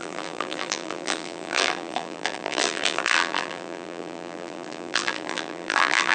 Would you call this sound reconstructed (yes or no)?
yes